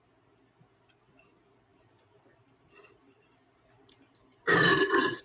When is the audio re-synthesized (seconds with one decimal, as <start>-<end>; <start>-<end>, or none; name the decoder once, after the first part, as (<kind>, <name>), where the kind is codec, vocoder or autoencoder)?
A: 1.7-4.8 (vocoder, BigVGAN v2)